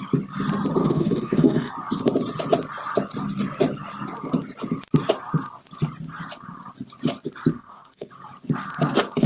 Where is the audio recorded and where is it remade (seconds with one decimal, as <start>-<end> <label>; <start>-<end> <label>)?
0.0-0.8 recorded; 0.8-1.7 remade; 1.7-7.5 recorded; 7.5-8.1 remade; 8.1-9.3 recorded